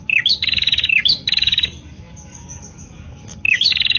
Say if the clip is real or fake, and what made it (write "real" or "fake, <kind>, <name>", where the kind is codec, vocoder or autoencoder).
fake, codec, DAC